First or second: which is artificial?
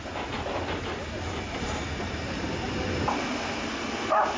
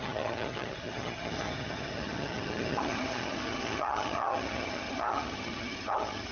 second